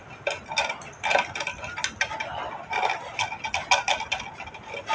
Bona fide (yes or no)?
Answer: yes